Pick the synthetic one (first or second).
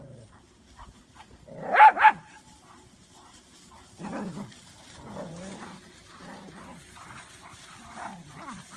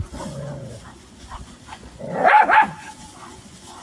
second